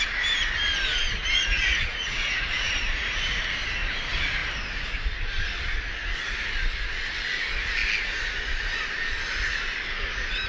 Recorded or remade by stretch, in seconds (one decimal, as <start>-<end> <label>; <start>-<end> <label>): 0.0-1.2 recorded; 1.2-3.4 remade; 3.4-10.5 recorded